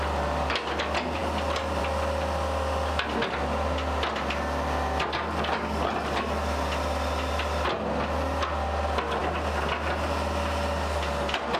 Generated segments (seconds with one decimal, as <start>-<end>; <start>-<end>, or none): none